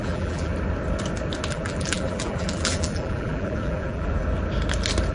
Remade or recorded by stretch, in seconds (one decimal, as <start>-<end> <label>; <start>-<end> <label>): 0.0-0.5 remade; 0.5-1.5 recorded; 1.5-4.2 remade; 4.2-5.1 recorded